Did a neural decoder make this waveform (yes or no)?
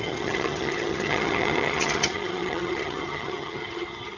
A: yes